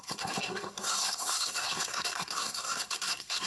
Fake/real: fake